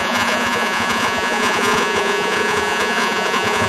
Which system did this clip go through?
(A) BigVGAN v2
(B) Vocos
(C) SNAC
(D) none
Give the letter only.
B